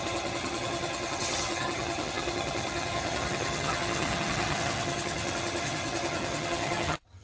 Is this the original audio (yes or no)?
no